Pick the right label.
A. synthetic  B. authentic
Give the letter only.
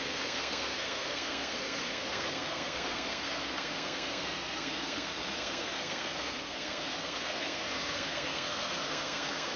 A